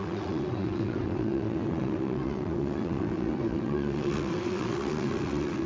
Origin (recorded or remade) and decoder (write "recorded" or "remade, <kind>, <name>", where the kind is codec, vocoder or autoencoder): remade, vocoder, WaveNeXt